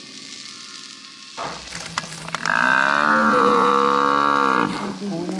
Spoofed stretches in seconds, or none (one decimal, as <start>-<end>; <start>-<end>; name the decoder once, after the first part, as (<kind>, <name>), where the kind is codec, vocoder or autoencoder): 3.1-3.7 (vocoder, Vocos)